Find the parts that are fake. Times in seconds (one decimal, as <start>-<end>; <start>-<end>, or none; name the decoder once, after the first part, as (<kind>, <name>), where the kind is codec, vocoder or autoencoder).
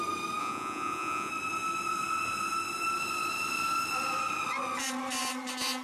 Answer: 0.4-1.3 (vocoder, Vocos)